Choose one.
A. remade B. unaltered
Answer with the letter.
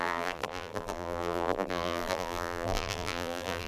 A